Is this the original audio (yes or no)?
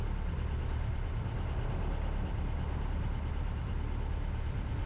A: yes